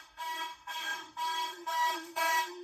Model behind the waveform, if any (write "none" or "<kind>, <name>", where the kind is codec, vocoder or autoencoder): autoencoder, DAC-VAE